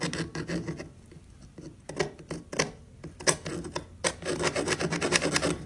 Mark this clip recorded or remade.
recorded